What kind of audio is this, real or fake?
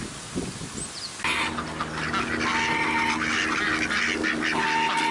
real